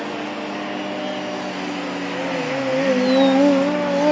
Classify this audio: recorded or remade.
recorded